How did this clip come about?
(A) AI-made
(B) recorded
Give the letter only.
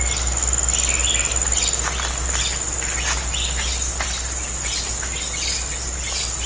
B